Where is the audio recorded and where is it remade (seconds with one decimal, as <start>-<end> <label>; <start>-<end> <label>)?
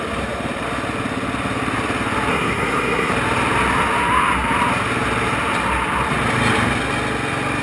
0.0-2.3 recorded; 2.3-3.1 remade; 3.1-7.6 recorded